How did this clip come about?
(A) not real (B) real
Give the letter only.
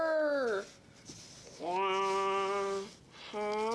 B